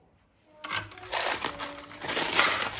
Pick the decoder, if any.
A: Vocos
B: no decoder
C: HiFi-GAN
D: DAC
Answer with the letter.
B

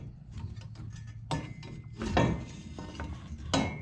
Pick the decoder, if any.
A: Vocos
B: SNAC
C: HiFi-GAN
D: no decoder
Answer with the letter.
D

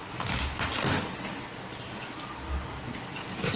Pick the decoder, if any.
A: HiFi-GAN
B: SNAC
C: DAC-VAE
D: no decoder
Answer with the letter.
D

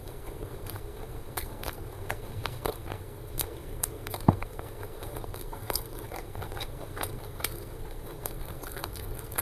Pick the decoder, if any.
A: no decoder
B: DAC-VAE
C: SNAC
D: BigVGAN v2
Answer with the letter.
C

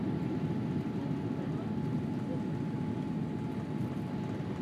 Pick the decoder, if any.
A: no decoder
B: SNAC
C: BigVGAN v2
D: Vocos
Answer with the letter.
A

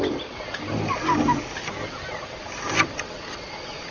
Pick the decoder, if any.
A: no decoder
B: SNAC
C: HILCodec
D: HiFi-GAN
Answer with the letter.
A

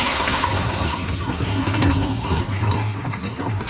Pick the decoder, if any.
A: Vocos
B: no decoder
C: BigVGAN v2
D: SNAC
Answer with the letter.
D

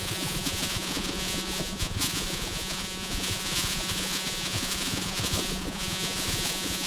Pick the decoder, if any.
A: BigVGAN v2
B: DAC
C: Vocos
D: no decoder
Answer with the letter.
C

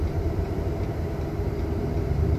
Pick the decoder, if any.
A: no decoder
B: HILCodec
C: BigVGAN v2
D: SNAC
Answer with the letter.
C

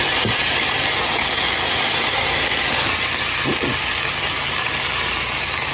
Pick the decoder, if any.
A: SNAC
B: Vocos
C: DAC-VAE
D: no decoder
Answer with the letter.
D